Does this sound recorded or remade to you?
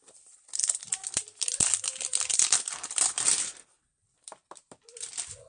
remade